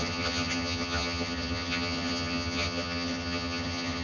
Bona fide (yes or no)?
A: no